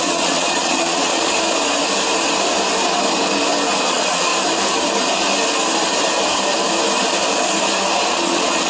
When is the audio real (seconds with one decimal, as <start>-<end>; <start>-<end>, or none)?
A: 1.3-3.9; 4.3-8.1